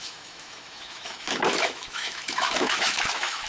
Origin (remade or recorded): remade